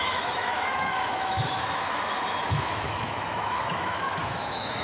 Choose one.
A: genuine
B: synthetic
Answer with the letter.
B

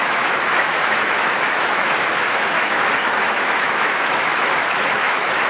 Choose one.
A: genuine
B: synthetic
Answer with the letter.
B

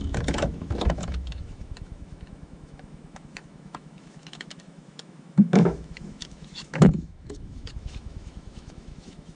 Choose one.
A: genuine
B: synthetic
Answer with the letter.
B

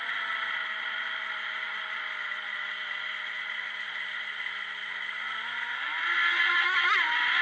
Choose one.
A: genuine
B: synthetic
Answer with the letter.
A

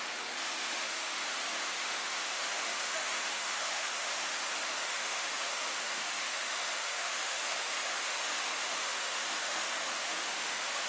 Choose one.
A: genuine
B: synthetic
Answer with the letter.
B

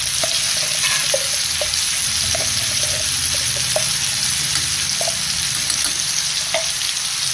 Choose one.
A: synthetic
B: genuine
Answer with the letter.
B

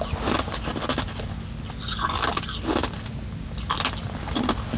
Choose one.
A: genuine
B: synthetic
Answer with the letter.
A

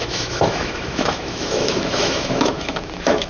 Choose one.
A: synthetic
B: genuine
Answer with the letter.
A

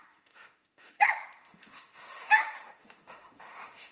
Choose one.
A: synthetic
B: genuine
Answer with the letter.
A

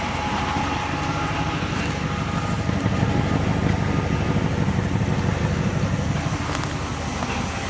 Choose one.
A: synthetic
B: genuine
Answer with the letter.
B